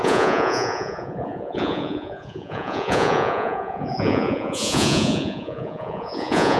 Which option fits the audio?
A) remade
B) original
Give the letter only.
A